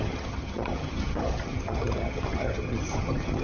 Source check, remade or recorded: remade